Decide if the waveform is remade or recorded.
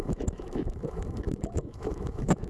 remade